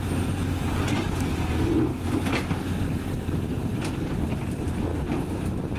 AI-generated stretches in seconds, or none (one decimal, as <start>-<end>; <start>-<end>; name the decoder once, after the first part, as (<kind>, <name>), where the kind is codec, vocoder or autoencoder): none